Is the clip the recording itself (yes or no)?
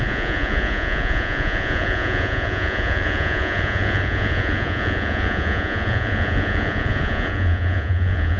no